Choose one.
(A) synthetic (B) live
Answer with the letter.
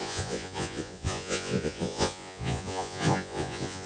A